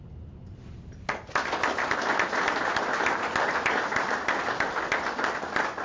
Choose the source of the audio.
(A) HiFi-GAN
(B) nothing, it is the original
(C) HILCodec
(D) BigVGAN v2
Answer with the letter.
B